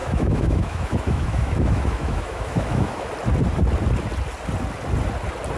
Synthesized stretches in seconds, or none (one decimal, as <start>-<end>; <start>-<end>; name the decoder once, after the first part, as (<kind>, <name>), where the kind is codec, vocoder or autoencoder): 0.0-3.1 (autoencoder, DAC-VAE)